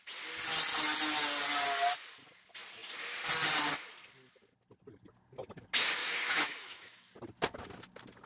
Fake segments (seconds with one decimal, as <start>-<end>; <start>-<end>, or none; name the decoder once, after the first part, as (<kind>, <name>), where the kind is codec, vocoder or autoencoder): 6.0-7.1 (autoencoder, DAC-VAE)